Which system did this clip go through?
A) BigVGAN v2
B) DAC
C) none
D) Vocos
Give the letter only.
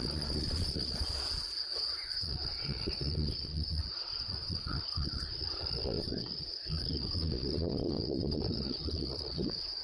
D